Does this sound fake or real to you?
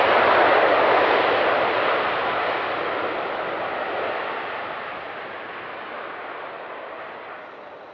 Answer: real